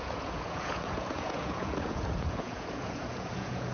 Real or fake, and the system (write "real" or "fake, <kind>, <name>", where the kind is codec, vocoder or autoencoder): fake, vocoder, Vocos